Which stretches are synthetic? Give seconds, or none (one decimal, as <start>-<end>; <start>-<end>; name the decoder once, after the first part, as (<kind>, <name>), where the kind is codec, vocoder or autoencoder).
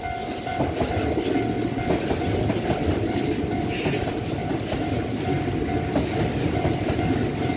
none